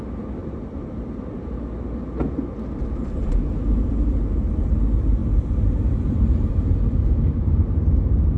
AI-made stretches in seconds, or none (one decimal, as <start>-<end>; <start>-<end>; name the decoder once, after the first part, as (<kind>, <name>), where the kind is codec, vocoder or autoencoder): 0.4-1.2 (vocoder, BigVGAN v2); 3.2-3.9; 5.2-6.7

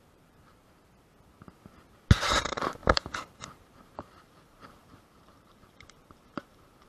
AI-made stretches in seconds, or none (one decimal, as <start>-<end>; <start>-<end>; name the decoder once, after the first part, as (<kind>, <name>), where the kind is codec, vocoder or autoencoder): 0.0-0.6 (vocoder, BigVGAN v2); 2.3-6.9